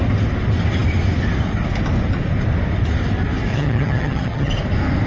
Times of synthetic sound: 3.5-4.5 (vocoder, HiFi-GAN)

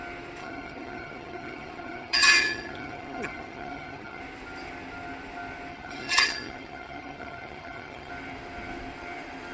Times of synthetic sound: 0.4-4.2 (vocoder, HiFi-GAN); 5.7-8.1

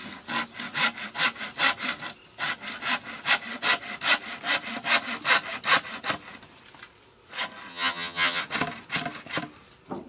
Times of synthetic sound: 7.7-8.4 (vocoder, HiFi-GAN)

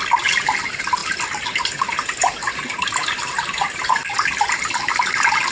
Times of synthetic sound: none